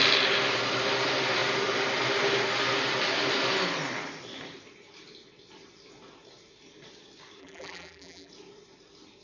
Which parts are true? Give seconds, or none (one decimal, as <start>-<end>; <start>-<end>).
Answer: 0.0-7.4; 8.3-9.2